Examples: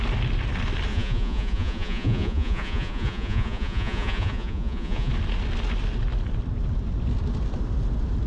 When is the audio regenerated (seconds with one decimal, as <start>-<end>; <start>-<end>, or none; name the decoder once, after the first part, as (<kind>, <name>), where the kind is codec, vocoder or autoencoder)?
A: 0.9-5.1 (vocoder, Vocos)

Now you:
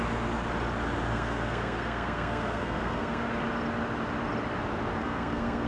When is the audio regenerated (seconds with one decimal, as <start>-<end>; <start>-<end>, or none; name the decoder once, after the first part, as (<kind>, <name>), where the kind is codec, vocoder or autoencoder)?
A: 1.1-3.3 (codec, SNAC); 5.0-5.7

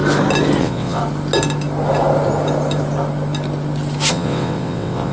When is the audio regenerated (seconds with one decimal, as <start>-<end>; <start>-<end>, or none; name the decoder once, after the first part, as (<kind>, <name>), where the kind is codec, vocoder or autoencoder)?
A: 0.6-1.0 (vocoder, WaveNeXt); 4.1-5.1

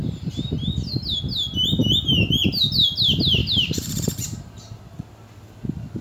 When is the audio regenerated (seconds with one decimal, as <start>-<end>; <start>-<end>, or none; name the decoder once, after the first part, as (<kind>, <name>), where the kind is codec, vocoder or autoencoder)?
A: 0.0-0.5 (vocoder, BigVGAN v2); 3.4-4.8

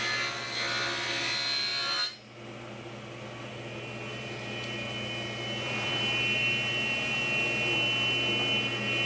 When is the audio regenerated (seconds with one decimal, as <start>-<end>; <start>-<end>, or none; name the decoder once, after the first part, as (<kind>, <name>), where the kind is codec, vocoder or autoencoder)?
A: 4.1-7.1 (vocoder, BigVGAN v2)